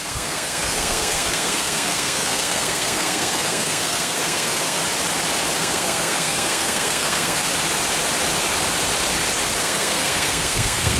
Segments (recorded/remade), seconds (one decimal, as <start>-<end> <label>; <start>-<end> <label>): 0.0-4.8 remade; 4.8-5.6 recorded; 5.6-7.5 remade; 7.5-9.6 recorded; 9.6-11.0 remade

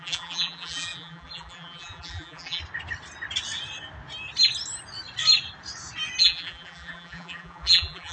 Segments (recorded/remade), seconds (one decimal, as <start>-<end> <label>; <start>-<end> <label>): 0.0-2.6 remade; 2.6-6.2 recorded; 6.2-8.1 remade

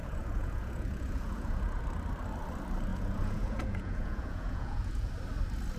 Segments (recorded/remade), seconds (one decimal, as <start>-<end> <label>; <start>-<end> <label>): 0.0-1.8 remade; 1.8-2.9 recorded; 2.9-5.1 remade; 5.1-5.8 recorded

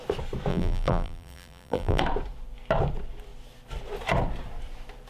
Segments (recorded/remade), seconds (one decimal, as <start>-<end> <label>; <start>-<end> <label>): 0.0-0.5 recorded; 0.5-2.0 remade; 2.0-5.1 recorded

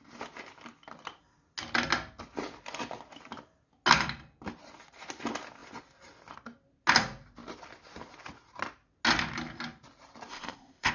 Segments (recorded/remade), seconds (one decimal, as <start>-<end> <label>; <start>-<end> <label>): 0.0-10.3 recorded; 10.3-10.9 remade